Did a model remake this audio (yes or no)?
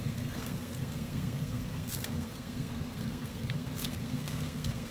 yes